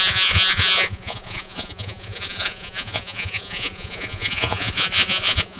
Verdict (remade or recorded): remade